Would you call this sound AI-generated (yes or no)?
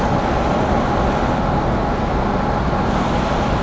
no